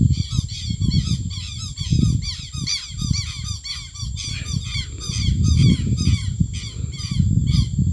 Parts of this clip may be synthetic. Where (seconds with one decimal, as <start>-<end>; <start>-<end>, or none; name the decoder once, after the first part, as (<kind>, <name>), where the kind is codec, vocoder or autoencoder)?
none